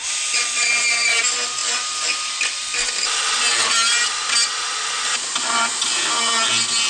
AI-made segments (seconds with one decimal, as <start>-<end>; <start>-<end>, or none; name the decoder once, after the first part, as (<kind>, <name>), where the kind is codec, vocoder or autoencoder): none